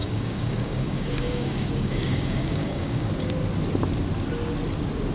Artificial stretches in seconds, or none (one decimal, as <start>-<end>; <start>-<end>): 0.0-3.1